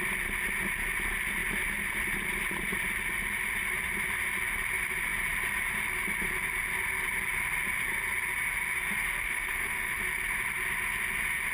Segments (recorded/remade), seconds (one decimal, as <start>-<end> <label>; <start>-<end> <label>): 0.0-9.2 recorded; 9.2-10.0 remade; 10.0-11.5 recorded